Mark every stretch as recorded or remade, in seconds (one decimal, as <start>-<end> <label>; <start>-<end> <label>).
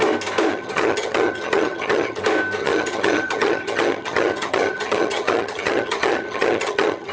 0.0-0.5 recorded; 0.5-2.2 remade; 2.2-2.6 recorded; 2.6-7.1 remade